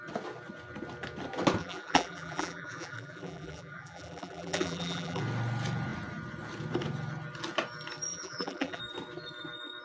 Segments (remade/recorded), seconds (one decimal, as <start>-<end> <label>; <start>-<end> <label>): 0.0-1.6 recorded; 1.6-5.2 remade; 5.2-8.1 recorded; 8.1-8.8 remade; 8.8-9.8 recorded